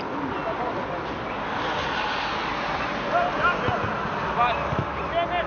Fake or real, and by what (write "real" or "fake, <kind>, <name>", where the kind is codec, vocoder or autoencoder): real